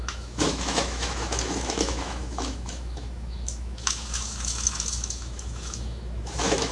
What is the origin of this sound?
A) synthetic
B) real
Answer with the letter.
A